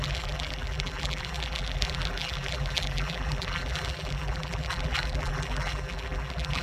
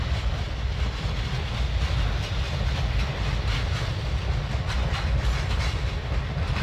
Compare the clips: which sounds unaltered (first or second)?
second